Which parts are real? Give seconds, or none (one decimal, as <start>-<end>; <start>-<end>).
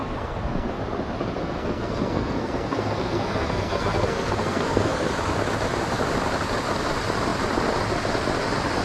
0.8-1.4; 5.1-8.8